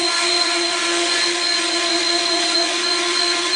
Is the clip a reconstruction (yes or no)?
yes